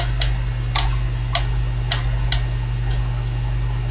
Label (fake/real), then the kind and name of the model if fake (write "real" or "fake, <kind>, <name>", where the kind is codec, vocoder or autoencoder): real